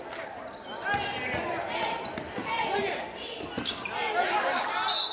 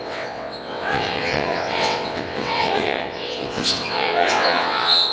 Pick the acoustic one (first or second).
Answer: first